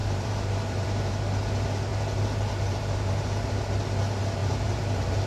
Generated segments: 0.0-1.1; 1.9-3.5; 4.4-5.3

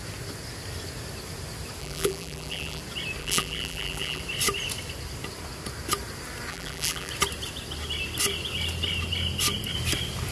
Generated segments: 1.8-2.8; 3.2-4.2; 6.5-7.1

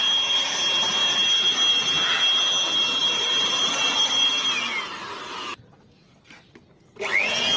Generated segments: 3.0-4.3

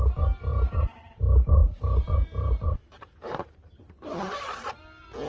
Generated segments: 0.5-1.1; 1.6-4.8